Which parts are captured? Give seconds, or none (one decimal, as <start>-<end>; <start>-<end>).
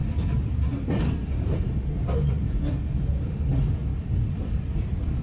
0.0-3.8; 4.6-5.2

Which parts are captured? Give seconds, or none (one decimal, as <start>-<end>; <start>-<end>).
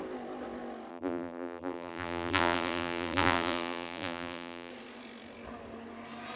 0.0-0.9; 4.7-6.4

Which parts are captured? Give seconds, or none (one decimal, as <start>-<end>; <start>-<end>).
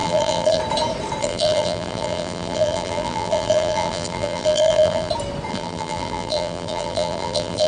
0.6-1.2; 5.1-5.5